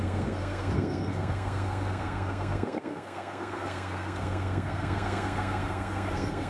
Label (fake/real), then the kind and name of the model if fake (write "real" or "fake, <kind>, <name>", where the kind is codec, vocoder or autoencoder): fake, codec, SNAC